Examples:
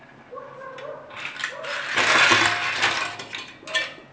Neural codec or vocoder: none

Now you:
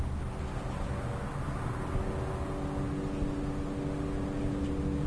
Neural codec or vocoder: none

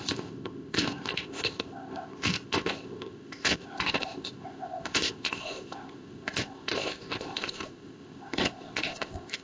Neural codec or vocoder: codec, ZipCodec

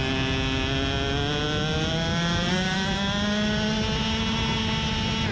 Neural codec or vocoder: none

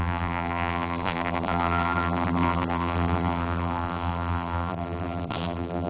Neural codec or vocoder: vocoder, BigVGAN v2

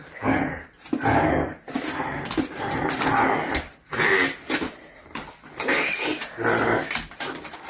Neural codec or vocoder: none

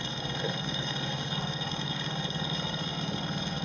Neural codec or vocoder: codec, SNAC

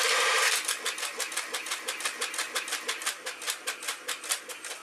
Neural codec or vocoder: none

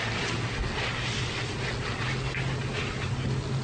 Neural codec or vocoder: none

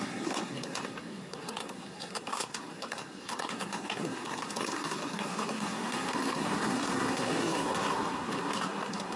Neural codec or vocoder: codec, SNAC